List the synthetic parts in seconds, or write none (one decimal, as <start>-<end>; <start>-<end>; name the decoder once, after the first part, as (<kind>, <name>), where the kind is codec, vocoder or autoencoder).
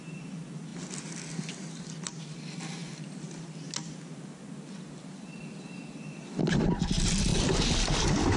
none